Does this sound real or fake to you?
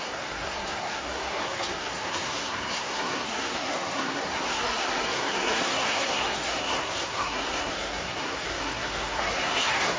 fake